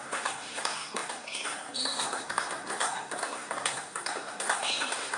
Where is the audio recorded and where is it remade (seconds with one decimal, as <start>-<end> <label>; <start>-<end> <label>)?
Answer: 0.0-5.2 remade